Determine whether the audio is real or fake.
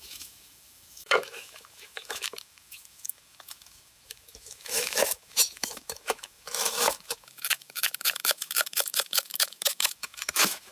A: fake